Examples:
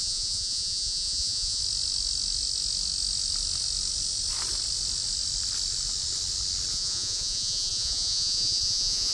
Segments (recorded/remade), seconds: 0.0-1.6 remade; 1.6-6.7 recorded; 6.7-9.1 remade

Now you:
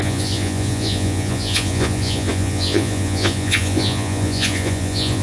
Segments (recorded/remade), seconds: 0.0-5.2 remade

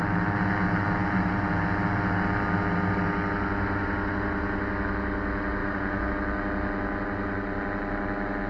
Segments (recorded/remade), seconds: 0.0-5.6 recorded; 5.6-6.1 remade; 6.1-8.5 recorded

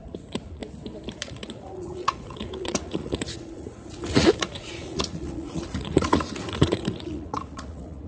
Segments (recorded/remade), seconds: 0.0-0.6 remade; 0.6-1.2 recorded; 1.2-8.1 remade

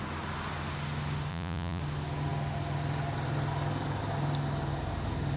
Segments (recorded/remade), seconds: 0.0-1.3 recorded; 1.3-1.8 remade; 1.8-5.4 recorded

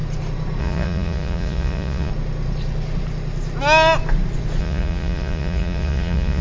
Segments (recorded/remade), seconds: 0.0-0.6 recorded; 0.6-2.1 remade; 2.1-4.6 recorded; 4.6-6.4 remade